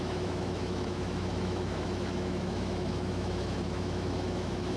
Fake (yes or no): yes